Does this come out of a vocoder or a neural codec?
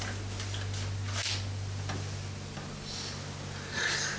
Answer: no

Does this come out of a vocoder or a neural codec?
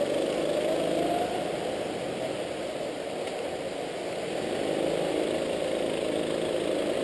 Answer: no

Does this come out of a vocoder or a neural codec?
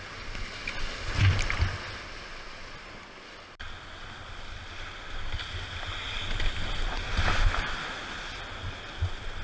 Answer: no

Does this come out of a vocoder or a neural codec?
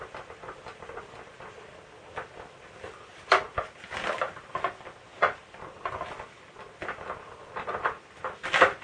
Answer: no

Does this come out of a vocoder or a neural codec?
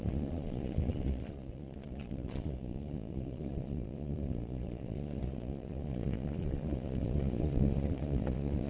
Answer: yes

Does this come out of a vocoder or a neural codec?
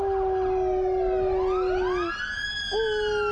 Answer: no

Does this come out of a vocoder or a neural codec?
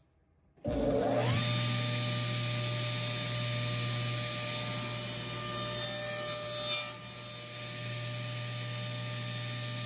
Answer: no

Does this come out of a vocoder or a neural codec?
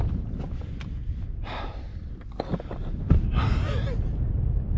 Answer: no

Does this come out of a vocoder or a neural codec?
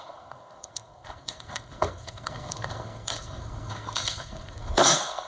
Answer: yes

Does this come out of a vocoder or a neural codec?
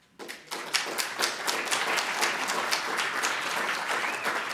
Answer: no